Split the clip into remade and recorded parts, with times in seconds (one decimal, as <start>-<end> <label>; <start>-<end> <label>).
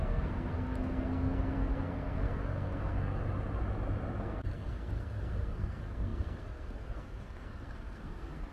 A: 0.0-3.2 remade; 3.2-4.2 recorded; 4.2-8.5 remade